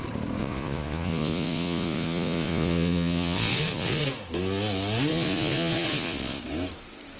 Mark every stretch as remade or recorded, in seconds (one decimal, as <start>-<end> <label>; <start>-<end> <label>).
0.0-0.4 recorded; 0.4-4.0 remade; 4.0-5.1 recorded; 5.1-6.4 remade; 6.4-7.2 recorded